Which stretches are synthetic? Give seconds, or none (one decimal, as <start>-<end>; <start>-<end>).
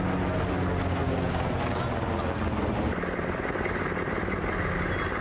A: none